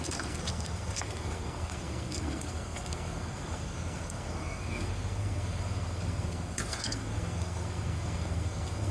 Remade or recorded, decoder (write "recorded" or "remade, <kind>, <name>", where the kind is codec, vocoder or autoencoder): remade, codec, SNAC